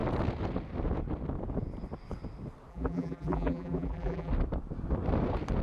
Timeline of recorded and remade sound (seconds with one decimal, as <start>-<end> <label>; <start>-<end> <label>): 0.0-2.7 recorded; 2.7-4.3 remade; 4.3-5.6 recorded